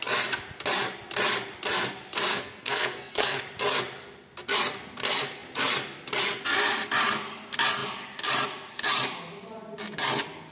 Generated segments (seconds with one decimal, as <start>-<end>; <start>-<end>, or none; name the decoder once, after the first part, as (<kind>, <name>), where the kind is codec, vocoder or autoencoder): 2.3-3.4 (codec, SNAC)